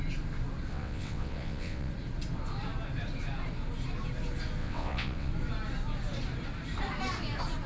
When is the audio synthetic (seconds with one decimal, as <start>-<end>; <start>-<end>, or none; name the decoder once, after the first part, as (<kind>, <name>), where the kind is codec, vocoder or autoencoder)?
0.7-1.9 (vocoder, WaveNeXt); 4.6-5.3